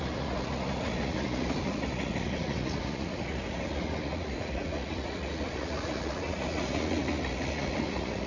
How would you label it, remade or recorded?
remade